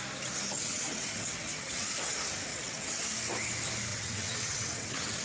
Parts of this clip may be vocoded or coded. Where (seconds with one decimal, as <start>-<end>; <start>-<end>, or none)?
0.6-1.8; 2.5-3.0; 3.9-5.2